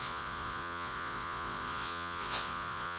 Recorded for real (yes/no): no